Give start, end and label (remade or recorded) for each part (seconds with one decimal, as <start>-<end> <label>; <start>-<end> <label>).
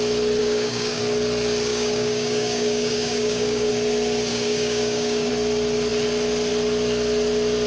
0.0-0.4 recorded; 0.4-1.0 remade; 1.0-1.7 recorded; 1.7-3.7 remade; 3.7-4.3 recorded; 4.3-5.3 remade; 5.3-7.7 recorded